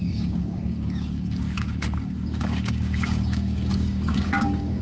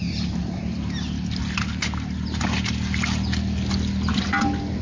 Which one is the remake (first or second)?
first